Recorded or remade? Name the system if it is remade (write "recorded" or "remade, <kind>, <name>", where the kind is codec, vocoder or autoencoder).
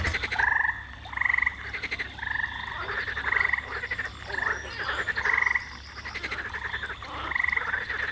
recorded